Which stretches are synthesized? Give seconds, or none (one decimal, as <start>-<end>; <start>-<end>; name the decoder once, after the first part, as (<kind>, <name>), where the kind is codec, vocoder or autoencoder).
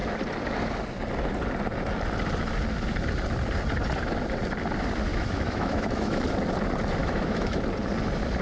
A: 5.1-6.2 (autoencoder, DAC-VAE); 7.0-7.6